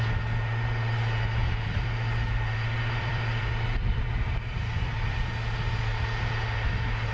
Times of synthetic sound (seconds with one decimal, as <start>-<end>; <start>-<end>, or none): 1.4-5.2